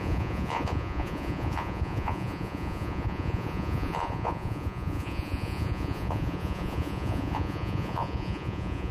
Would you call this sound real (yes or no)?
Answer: no